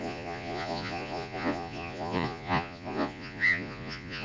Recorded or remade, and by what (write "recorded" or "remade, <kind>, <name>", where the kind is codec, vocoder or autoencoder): remade, vocoder, Vocos